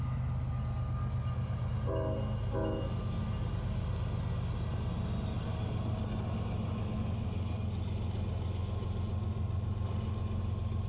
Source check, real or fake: real